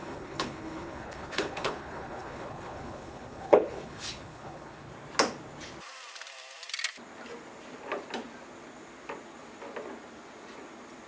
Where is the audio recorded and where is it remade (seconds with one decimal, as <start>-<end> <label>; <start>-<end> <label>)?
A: 0.0-4.9 remade; 4.9-11.1 recorded